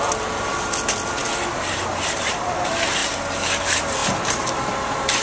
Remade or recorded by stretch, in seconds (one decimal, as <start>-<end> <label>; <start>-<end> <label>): 0.0-3.0 remade; 3.0-3.6 recorded; 3.6-4.0 remade; 4.0-5.2 recorded